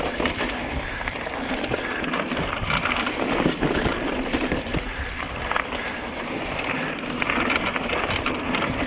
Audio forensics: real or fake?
fake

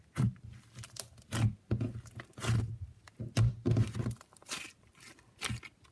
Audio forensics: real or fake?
real